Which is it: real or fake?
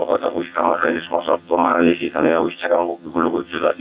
fake